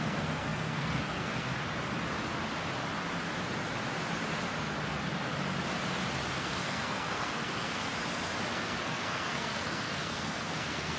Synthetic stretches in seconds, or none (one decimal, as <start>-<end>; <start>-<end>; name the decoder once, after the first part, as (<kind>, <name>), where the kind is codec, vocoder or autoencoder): 0.0-1.5 (codec, SNAC); 6.3-7.9; 8.5-11.0